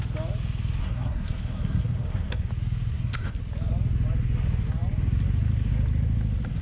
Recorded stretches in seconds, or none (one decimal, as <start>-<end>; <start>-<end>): 0.0-0.8; 2.5-2.9; 3.4-6.6